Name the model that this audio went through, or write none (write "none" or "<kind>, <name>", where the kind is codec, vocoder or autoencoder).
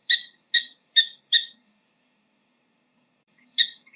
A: codec, DAC